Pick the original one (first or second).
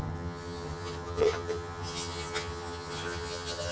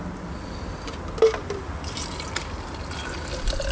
second